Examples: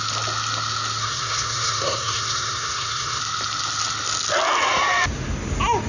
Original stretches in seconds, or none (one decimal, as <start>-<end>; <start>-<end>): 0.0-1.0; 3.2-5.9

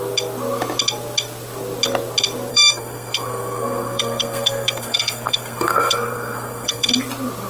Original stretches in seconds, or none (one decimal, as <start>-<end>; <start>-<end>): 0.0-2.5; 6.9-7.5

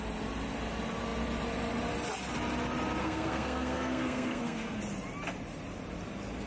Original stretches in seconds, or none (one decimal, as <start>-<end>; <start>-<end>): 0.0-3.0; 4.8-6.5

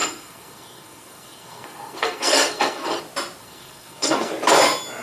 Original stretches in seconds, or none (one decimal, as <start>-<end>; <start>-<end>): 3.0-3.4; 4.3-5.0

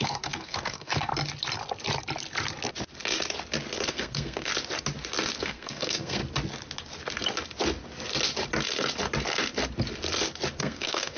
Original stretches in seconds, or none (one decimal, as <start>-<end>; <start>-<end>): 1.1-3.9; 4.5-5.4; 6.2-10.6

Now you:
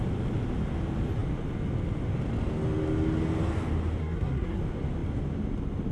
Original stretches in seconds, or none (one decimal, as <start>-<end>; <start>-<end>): 0.0-4.0; 4.6-5.9

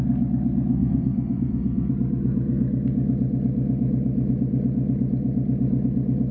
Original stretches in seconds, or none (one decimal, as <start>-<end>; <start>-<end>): 0.0-0.7; 1.9-6.3